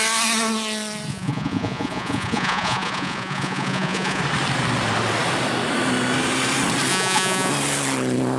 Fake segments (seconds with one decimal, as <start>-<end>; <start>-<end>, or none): 1.1-4.2; 6.9-7.5